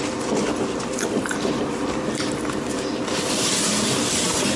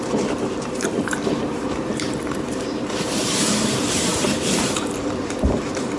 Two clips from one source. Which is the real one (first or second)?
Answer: first